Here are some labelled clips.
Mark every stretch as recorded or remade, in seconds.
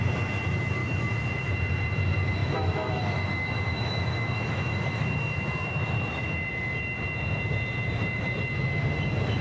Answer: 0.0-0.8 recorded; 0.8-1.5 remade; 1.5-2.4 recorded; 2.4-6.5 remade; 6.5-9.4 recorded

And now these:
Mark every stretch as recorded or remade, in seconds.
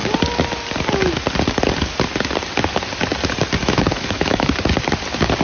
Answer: 0.0-3.6 recorded; 3.6-4.5 remade; 4.5-5.4 recorded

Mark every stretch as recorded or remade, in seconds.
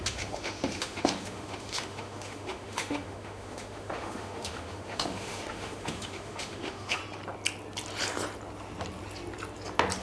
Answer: 0.0-7.0 remade; 7.0-10.0 recorded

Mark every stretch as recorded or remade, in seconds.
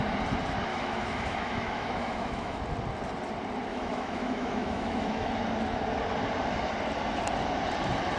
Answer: 0.0-0.7 recorded; 0.7-2.6 remade; 2.6-3.7 recorded; 3.7-5.3 remade; 5.3-8.2 recorded